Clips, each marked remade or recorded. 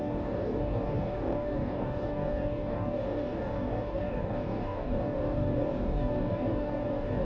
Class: remade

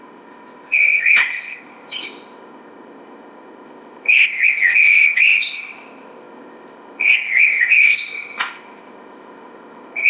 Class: remade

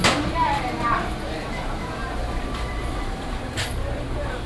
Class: remade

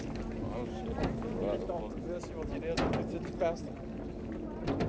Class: recorded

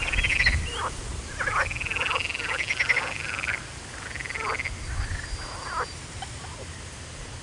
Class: recorded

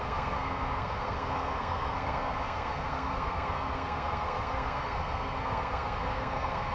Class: remade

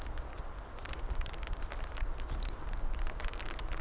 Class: remade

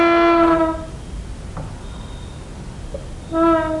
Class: recorded